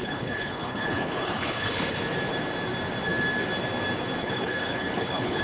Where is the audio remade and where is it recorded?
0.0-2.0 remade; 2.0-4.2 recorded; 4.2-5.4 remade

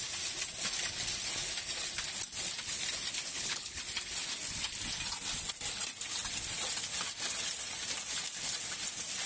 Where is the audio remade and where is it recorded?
0.0-3.3 recorded; 3.3-3.8 remade; 3.8-9.3 recorded

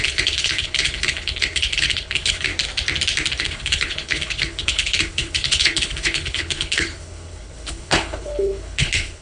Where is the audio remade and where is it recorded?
0.0-2.5 remade; 2.5-3.4 recorded; 3.4-9.2 remade